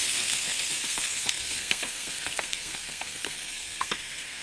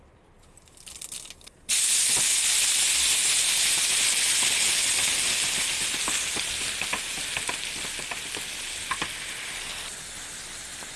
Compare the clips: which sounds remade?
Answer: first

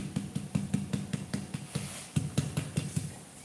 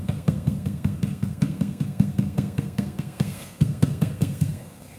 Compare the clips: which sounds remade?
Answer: second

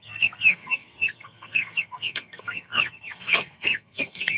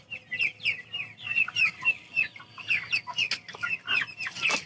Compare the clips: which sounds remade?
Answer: first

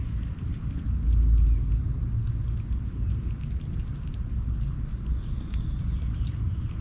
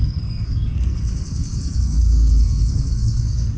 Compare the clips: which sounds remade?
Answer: second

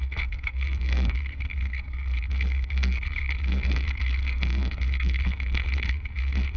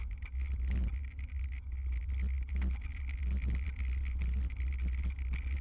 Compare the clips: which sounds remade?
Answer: first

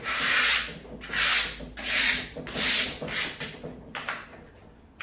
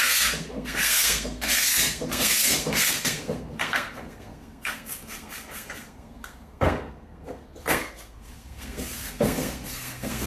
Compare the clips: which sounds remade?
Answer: second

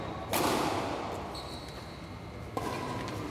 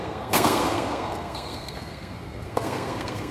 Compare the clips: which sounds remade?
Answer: second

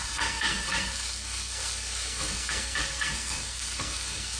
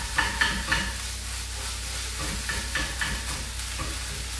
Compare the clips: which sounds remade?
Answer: first